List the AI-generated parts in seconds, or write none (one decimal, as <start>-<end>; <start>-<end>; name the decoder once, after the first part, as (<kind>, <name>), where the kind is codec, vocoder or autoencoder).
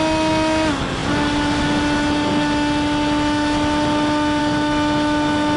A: none